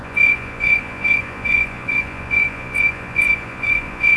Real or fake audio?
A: fake